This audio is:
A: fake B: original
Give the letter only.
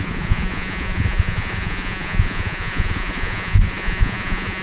A